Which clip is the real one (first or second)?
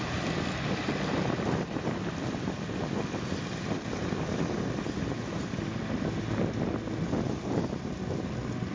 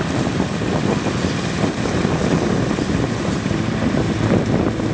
first